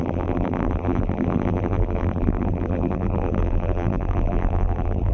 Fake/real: fake